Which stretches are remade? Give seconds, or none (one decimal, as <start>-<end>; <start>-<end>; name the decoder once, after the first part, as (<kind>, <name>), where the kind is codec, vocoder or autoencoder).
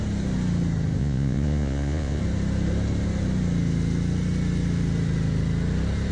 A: 1.0-2.2 (vocoder, Vocos)